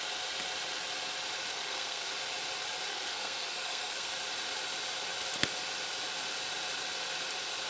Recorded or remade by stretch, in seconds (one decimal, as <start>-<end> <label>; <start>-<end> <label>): 0.0-1.5 recorded; 1.5-2.1 remade; 2.1-2.9 recorded; 2.9-4.1 remade; 4.1-7.7 recorded